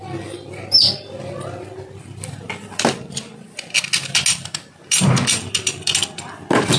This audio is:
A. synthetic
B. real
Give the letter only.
B